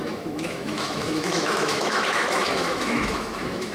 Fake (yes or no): yes